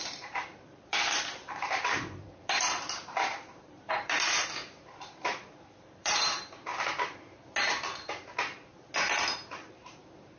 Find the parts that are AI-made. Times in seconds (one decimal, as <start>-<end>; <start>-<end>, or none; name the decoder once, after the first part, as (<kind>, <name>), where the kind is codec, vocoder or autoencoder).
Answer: 0.0-6.7 (vocoder, BigVGAN v2); 9.7-10.4